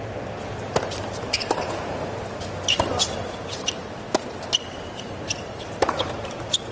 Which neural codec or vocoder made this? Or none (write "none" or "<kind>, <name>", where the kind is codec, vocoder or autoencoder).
none